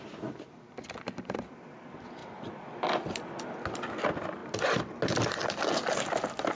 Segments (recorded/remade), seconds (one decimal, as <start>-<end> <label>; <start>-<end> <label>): 0.0-6.6 recorded